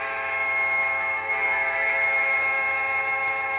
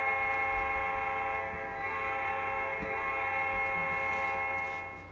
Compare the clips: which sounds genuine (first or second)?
second